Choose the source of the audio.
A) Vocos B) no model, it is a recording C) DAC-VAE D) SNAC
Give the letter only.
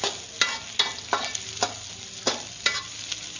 B